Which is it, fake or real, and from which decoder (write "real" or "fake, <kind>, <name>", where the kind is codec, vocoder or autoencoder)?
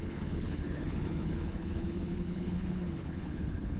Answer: fake, codec, HILCodec